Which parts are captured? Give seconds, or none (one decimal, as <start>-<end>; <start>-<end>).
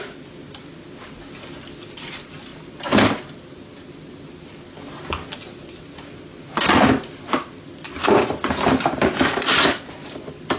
0.0-10.6